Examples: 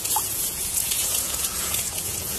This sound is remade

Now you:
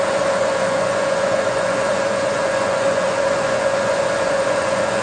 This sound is remade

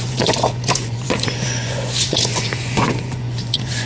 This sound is remade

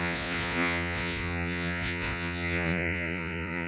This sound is remade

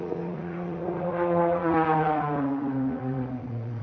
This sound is remade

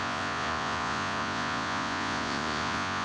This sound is remade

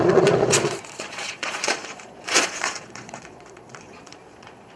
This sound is remade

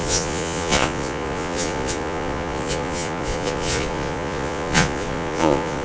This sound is remade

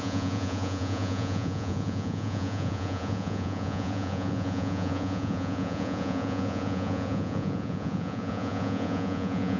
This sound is remade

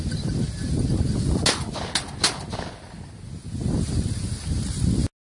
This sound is recorded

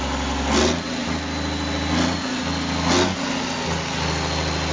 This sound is recorded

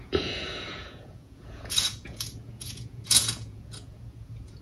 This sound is remade